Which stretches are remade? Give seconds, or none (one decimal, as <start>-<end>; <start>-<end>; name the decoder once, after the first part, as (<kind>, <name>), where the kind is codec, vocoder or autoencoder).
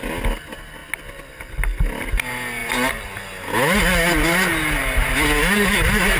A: none